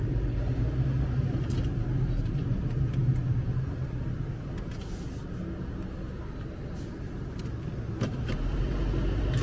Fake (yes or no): no